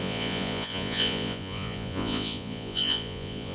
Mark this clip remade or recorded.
remade